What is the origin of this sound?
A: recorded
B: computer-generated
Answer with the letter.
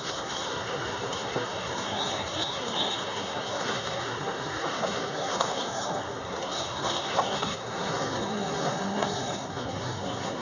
B